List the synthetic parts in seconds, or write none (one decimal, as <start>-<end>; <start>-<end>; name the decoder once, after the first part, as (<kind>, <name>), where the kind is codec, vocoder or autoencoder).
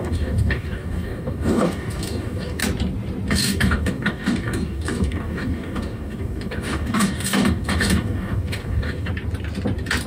0.0-2.6 (codec, DAC); 3.3-9.1